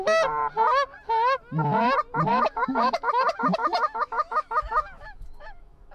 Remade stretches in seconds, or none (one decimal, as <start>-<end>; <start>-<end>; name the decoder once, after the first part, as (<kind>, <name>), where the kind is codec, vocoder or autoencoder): 2.3-5.9 (autoencoder, DAC-VAE)